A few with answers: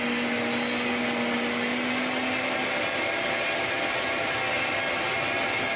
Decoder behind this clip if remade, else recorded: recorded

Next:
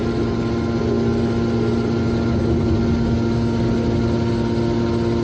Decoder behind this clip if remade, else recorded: recorded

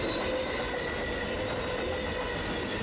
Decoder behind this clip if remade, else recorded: recorded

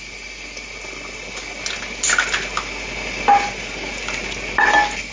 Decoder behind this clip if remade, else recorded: recorded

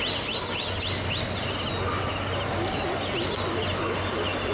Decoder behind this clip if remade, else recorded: recorded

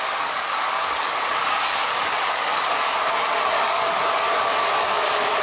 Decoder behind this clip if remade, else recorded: remade, codec, DAC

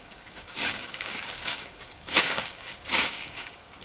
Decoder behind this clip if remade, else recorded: remade, codec, DAC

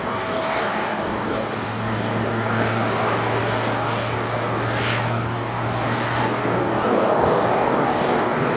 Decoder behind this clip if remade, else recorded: remade, codec, DAC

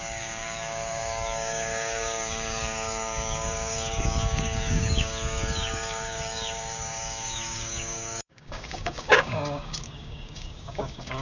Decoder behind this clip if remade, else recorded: remade, codec, DAC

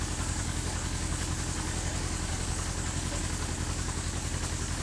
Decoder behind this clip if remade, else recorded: remade, codec, DAC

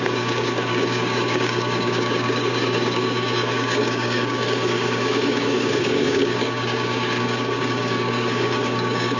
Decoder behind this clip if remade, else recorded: remade, codec, DAC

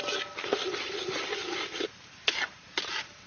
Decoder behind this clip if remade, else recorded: recorded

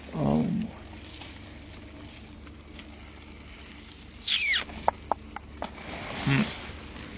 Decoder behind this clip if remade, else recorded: recorded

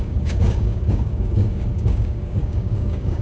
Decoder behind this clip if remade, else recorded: remade, codec, DAC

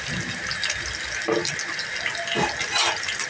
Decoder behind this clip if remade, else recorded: recorded